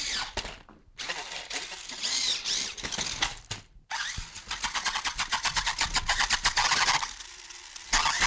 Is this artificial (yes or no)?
no